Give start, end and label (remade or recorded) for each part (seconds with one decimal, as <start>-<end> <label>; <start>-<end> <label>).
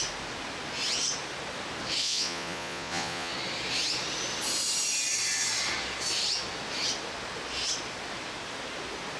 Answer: 0.0-2.0 recorded; 2.0-3.3 remade; 3.3-9.2 recorded